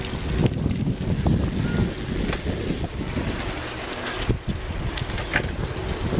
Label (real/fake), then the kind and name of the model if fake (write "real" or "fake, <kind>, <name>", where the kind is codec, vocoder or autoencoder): real